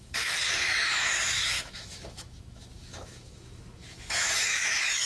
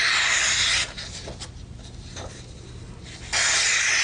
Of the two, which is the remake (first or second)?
first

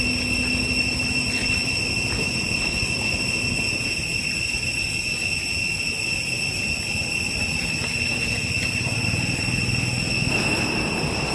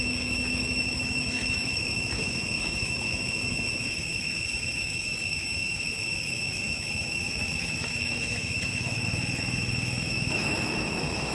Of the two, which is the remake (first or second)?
second